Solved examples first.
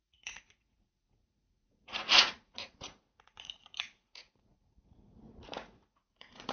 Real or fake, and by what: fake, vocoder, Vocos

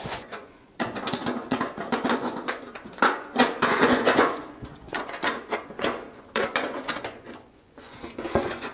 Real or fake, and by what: fake, vocoder, Vocos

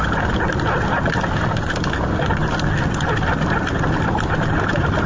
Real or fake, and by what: real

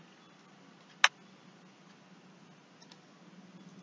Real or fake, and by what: real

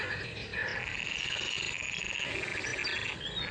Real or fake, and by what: real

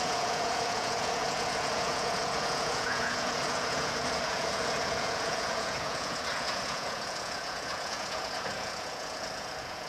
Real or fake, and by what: fake, vocoder, Vocos